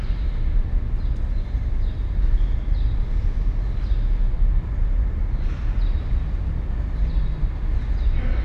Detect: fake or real real